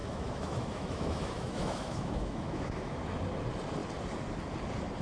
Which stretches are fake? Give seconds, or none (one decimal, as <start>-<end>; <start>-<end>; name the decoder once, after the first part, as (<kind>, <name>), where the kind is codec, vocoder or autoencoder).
0.0-3.0 (autoencoder, DAC-VAE)